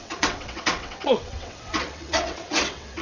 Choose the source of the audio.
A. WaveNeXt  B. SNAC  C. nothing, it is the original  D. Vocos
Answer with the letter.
A